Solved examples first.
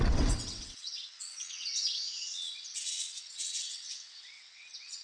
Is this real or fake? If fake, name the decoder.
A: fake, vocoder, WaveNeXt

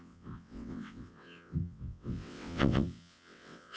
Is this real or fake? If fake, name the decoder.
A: fake, vocoder, WaveNeXt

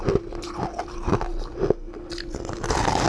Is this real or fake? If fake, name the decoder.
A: real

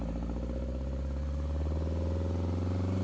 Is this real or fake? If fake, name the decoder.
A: real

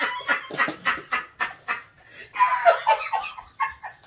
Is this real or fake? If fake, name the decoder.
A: real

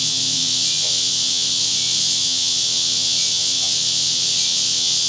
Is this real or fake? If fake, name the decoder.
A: fake, vocoder, WaveNeXt